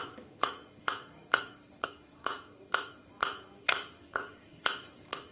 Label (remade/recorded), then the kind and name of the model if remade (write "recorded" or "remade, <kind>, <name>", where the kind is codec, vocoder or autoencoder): remade, autoencoder, DAC-VAE